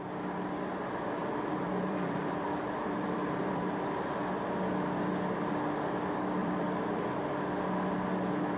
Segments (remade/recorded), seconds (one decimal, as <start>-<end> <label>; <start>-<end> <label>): 0.0-1.2 recorded; 1.2-3.9 remade; 3.9-6.4 recorded; 6.4-7.0 remade; 7.0-8.6 recorded